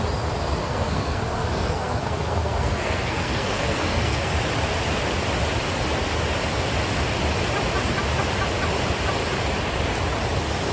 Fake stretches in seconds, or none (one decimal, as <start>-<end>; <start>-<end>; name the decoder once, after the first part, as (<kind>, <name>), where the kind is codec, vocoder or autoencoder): 0.6-4.3 (codec, SNAC)

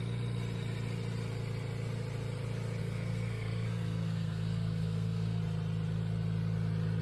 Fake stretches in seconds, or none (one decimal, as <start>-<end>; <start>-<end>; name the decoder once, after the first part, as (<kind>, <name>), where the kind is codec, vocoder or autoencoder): 2.8-5.4 (codec, SNAC)

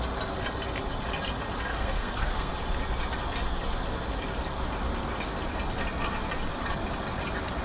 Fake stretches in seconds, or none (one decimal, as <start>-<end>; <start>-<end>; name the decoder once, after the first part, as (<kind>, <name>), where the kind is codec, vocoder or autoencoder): 1.7-2.5 (codec, SNAC)

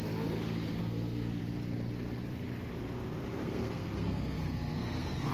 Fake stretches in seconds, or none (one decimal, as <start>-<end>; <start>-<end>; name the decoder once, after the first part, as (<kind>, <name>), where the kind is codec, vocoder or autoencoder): 0.8-1.4 (codec, SNAC); 3.4-5.3

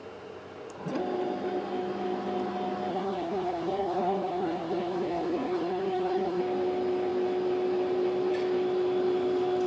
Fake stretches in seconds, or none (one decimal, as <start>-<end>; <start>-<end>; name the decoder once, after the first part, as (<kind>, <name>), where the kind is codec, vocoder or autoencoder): 2.9-6.4 (codec, SNAC)

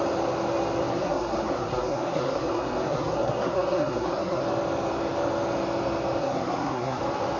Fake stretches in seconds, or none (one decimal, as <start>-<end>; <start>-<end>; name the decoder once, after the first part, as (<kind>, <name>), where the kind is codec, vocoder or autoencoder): 0.9-4.4 (codec, SNAC); 6.2-7.0

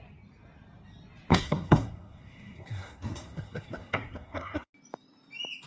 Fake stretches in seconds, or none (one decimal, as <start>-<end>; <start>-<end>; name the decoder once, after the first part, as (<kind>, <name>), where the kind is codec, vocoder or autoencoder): 1.3-4.7 (codec, SNAC)